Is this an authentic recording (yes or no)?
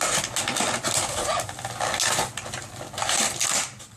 yes